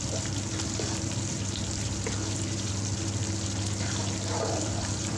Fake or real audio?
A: fake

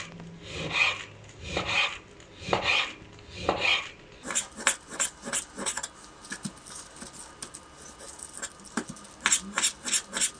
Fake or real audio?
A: real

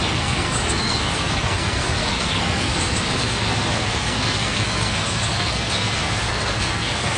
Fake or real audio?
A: fake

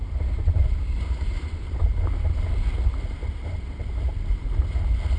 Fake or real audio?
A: real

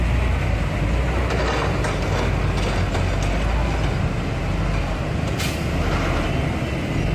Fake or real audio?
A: real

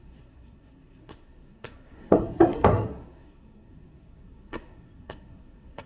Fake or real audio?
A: fake